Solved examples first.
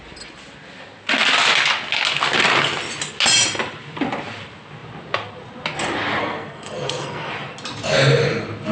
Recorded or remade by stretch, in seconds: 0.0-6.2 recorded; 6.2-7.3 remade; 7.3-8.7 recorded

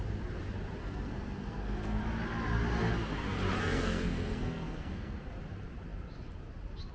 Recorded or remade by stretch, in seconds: 0.0-0.8 recorded; 0.8-2.0 remade; 2.0-3.6 recorded; 3.6-5.3 remade; 5.3-6.9 recorded

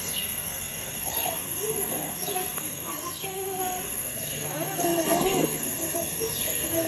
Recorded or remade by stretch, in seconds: 0.0-6.9 remade

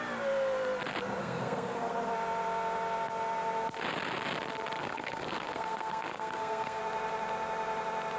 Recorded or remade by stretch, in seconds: 0.0-1.2 recorded; 1.2-1.9 remade; 1.9-4.8 recorded; 4.8-6.8 remade; 6.8-8.2 recorded

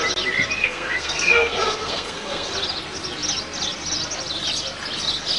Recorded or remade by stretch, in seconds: 0.0-0.6 recorded; 0.6-2.5 remade; 2.5-5.4 recorded

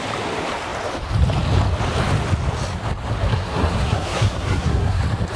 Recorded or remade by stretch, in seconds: 0.0-3.2 recorded; 3.2-5.0 remade; 5.0-5.4 recorded